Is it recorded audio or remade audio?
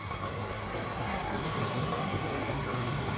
remade